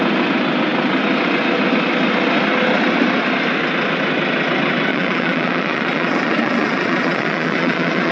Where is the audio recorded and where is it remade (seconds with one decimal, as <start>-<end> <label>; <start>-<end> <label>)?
0.0-4.9 recorded; 4.9-8.1 remade